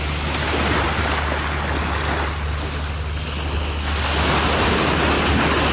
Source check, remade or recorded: recorded